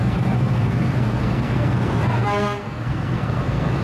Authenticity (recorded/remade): remade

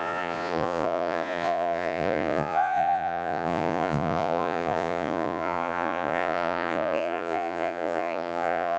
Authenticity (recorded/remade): remade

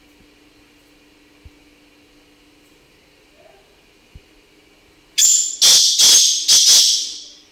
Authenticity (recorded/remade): recorded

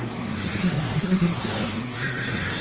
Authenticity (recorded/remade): remade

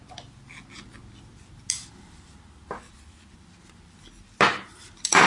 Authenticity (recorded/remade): recorded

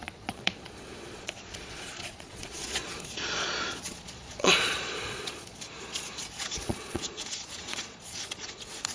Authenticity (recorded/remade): remade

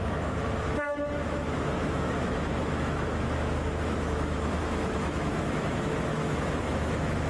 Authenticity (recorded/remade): remade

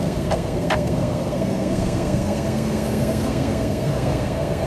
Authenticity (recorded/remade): remade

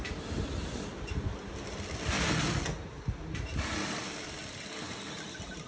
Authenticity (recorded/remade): recorded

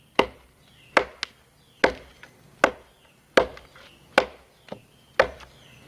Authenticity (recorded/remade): recorded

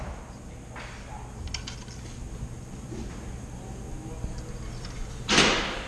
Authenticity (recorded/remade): recorded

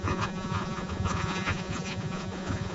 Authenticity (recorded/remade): remade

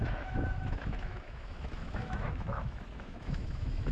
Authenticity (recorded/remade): remade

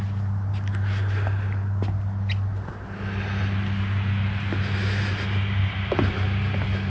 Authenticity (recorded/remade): recorded